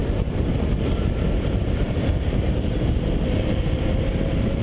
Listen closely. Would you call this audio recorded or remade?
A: remade